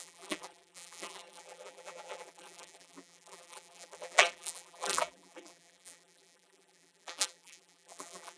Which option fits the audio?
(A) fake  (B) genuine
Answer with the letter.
A